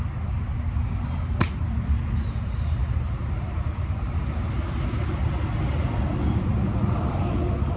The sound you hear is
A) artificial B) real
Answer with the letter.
B